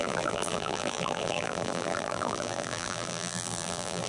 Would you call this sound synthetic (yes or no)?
yes